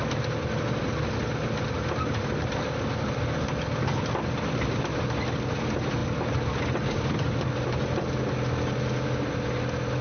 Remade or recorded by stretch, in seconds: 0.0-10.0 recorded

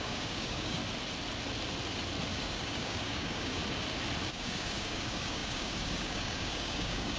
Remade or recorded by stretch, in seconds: 0.0-0.8 remade; 0.8-2.3 recorded; 2.3-3.6 remade; 3.6-4.3 recorded; 4.3-7.2 remade

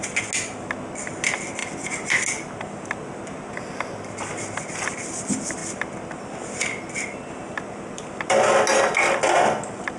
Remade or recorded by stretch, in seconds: 0.0-10.0 recorded

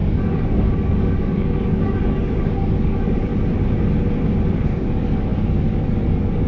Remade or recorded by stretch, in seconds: 0.0-3.3 remade; 3.3-4.5 recorded; 4.5-6.5 remade

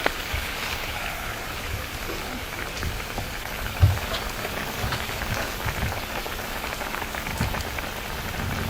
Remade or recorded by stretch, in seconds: 0.0-7.3 remade; 7.3-8.7 recorded

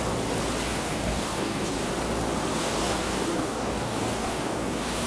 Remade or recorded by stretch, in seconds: 0.0-0.7 recorded; 0.7-1.9 remade; 1.9-2.5 recorded; 2.5-5.1 remade

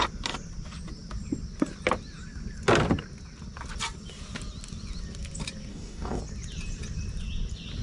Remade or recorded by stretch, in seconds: 0.0-5.7 recorded; 5.7-6.2 remade; 6.2-7.8 recorded